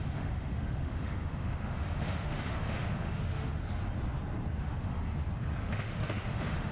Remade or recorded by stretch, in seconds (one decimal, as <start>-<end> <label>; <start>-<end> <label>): 0.0-3.6 remade; 3.6-4.6 recorded; 4.6-5.0 remade; 5.0-5.6 recorded; 5.6-6.7 remade